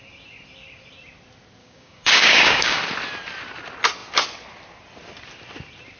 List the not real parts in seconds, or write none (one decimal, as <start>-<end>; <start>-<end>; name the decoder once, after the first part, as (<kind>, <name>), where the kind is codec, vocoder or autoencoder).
1.6-2.8 (codec, DAC)